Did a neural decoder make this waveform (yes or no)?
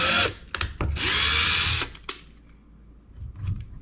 no